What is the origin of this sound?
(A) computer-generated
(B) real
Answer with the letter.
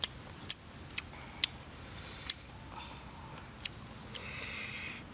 B